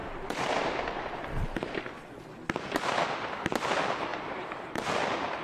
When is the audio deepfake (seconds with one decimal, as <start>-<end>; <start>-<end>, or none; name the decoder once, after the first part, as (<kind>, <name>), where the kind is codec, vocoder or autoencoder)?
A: 0.0-1.7 (vocoder, BigVGAN v2); 4.1-5.0